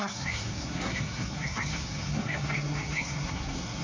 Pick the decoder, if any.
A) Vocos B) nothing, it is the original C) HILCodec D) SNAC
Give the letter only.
D